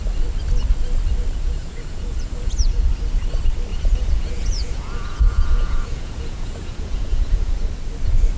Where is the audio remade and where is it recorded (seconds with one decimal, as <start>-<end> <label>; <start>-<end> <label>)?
0.0-1.3 recorded; 1.3-2.9 remade; 2.9-3.7 recorded; 3.7-7.6 remade; 7.6-8.4 recorded